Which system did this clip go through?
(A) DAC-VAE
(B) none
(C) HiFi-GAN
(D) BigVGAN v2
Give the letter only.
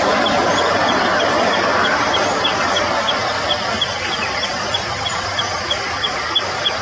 D